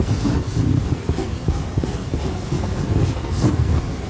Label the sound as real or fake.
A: fake